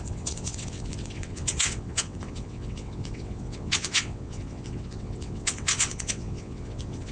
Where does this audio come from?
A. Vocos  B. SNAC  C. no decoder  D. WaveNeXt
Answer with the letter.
D